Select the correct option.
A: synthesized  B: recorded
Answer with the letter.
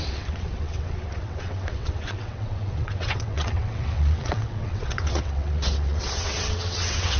A